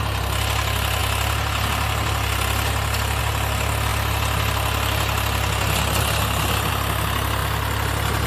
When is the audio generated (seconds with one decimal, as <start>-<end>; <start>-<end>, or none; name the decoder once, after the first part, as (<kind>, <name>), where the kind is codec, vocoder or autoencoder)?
none